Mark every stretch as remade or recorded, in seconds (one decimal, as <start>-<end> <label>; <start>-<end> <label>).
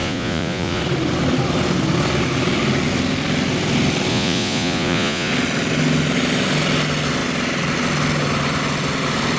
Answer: 0.0-0.8 remade; 0.8-4.1 recorded; 4.1-5.3 remade; 5.3-9.4 recorded